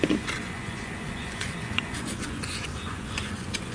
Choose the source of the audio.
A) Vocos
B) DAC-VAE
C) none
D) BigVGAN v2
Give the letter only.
A